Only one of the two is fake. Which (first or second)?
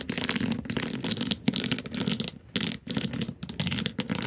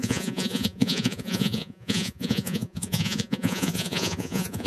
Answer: second